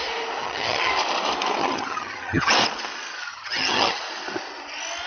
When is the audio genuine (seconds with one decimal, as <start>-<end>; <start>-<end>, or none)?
0.0-0.4; 0.9-1.6; 2.5-3.3; 4.0-5.1

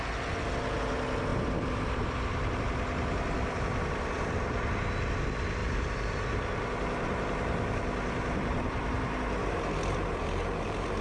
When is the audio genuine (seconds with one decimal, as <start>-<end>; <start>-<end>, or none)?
0.0-5.6

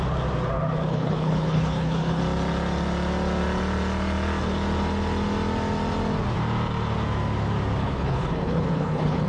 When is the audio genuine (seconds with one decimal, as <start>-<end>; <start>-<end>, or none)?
0.0-0.9; 2.2-7.8

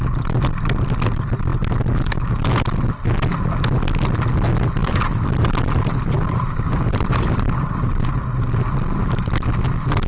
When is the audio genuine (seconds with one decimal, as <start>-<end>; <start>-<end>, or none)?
0.0-4.8; 8.1-10.1

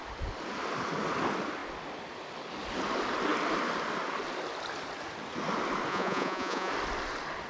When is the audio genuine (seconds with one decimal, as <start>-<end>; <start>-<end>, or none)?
0.0-5.9; 6.7-7.5

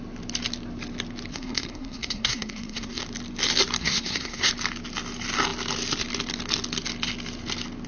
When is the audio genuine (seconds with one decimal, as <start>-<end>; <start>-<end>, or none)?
0.0-1.3; 3.0-3.8; 4.5-7.9

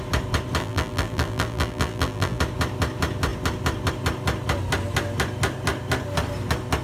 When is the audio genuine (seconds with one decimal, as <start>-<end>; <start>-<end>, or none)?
0.0-0.6; 2.4-6.8

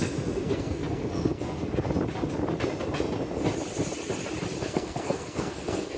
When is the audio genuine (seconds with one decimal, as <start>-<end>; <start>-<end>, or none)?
1.6-4.6